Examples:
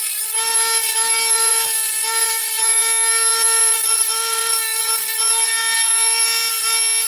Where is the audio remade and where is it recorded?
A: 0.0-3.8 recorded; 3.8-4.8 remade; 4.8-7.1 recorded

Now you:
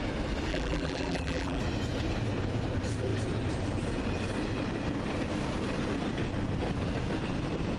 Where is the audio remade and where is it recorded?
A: 0.0-0.5 recorded; 0.5-1.6 remade; 1.6-7.8 recorded

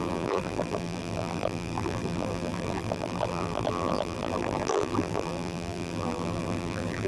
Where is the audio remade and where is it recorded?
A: 0.0-7.1 remade